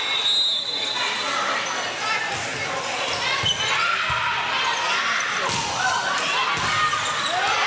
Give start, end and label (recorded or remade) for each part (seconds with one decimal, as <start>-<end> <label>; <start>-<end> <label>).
0.0-7.7 recorded